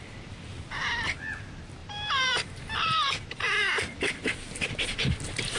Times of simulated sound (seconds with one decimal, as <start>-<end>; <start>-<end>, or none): 1.8-5.6